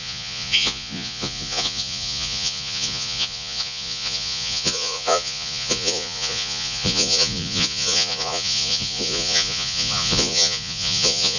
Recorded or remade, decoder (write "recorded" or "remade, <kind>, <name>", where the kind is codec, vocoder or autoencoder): remade, vocoder, Vocos